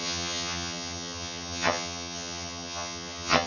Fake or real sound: fake